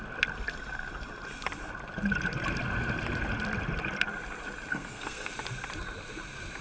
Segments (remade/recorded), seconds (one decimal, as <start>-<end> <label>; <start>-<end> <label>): 0.0-4.7 recorded; 4.7-5.3 remade; 5.3-6.6 recorded